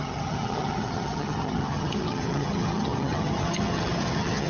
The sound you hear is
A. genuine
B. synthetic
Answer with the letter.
B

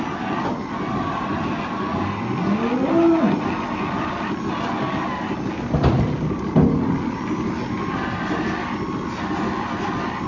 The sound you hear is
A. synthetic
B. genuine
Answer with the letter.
B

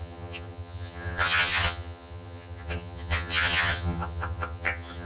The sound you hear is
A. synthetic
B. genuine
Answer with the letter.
A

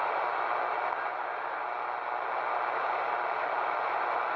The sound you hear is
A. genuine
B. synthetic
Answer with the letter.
A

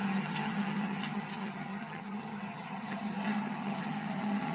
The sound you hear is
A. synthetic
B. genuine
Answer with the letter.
A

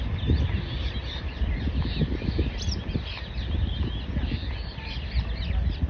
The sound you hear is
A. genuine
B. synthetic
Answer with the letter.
A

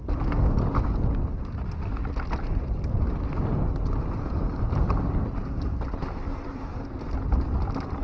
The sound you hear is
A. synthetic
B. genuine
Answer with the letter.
B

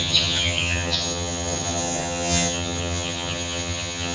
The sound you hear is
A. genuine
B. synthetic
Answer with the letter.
B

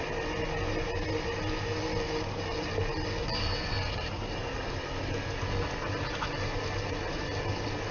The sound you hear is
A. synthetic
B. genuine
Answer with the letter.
B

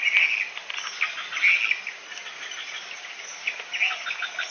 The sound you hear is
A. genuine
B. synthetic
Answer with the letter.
A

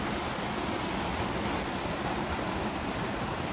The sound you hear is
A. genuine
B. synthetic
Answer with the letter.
A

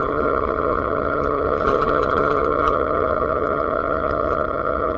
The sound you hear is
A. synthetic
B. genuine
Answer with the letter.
A